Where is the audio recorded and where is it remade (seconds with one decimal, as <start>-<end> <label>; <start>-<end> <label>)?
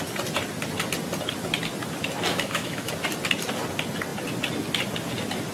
0.0-2.3 recorded; 2.3-2.9 remade; 2.9-5.5 recorded